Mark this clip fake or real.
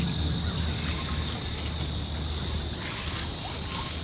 real